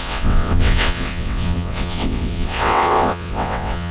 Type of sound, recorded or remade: remade